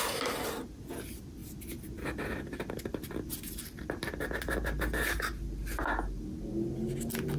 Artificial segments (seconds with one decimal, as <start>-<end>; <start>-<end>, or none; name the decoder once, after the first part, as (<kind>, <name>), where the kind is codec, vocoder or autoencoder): 1.4-2.7 (vocoder, BigVGAN v2); 3.6-4.2